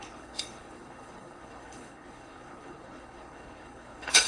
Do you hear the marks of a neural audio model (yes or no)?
yes